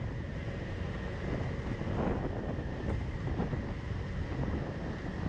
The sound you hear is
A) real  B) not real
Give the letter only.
A